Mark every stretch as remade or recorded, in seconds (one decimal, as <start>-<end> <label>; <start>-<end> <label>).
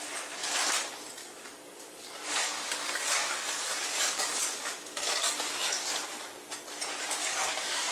0.0-1.2 recorded; 1.2-5.9 remade; 5.9-7.2 recorded; 7.2-7.9 remade